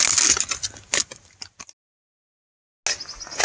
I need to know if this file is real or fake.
real